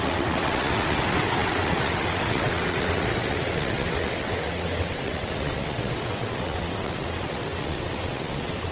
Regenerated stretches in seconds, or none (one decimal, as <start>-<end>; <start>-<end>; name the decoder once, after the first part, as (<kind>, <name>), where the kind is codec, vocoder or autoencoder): 0.0-8.7 (vocoder, WaveNeXt)